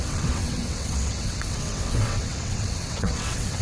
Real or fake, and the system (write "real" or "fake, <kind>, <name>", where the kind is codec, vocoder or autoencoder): fake, vocoder, WaveNeXt